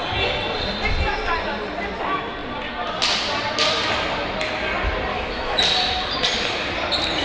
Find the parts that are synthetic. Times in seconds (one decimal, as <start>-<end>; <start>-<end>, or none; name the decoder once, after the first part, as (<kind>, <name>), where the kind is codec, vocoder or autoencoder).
5.1-5.6 (autoencoder, DAC-VAE)